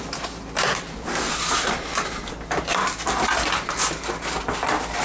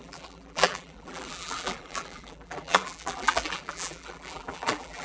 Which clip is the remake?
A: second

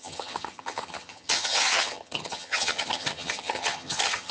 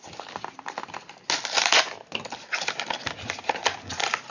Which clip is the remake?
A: first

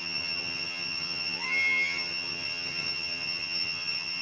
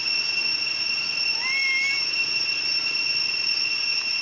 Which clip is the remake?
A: first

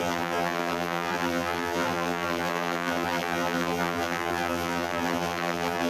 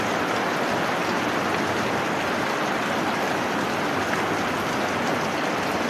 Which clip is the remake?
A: first